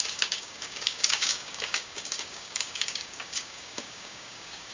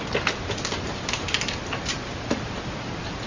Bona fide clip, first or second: second